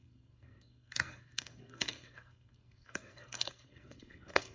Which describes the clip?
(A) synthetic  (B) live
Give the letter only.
A